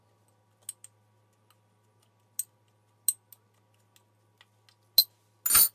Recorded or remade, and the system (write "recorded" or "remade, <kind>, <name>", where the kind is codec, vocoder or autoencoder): recorded